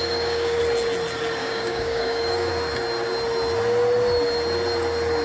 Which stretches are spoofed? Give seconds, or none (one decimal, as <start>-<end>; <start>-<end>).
0.0-0.6; 1.4-2.5